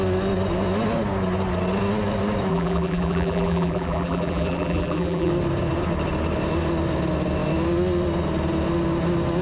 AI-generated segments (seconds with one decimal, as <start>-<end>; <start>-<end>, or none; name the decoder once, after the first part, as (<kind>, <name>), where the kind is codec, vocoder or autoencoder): 2.5-5.3 (vocoder, BigVGAN v2)